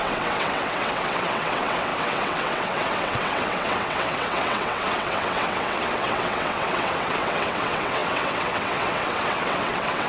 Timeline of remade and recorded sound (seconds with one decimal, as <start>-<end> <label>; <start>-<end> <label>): 0.0-10.1 remade